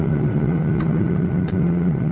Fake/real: fake